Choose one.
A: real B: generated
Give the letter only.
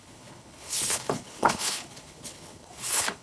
B